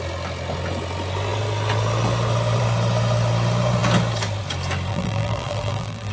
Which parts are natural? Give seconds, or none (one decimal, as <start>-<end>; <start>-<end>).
0.0-4.9